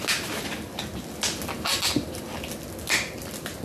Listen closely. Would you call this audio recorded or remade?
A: recorded